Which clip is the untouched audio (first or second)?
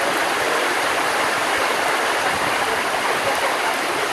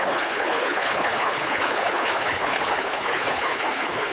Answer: first